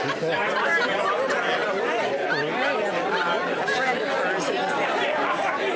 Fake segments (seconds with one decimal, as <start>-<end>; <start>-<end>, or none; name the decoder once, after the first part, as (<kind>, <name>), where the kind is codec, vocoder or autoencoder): none

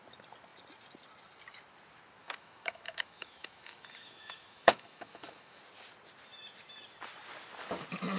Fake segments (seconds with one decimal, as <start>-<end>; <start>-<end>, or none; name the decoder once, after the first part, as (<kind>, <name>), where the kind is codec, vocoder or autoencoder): 2.2-5.6 (autoencoder, DAC-VAE)

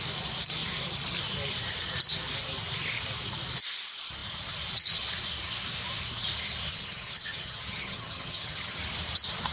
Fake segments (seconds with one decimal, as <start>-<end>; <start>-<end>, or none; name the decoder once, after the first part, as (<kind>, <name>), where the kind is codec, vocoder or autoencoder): 6.7-8.8 (vocoder, HiFi-GAN)

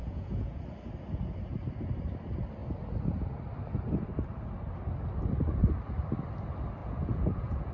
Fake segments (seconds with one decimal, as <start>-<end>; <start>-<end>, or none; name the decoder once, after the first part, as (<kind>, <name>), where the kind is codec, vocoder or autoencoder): 0.0-0.6 (vocoder, Vocos); 6.8-7.7